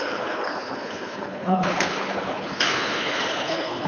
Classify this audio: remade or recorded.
remade